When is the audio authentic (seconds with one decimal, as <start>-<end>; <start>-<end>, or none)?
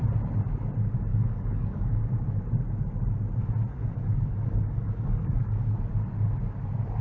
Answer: 0.0-1.1; 2.0-3.7; 5.7-7.0